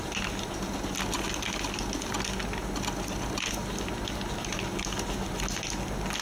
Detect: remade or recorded recorded